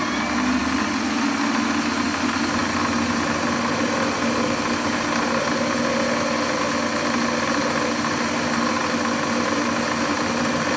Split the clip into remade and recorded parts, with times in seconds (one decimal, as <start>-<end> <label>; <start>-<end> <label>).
0.0-10.8 recorded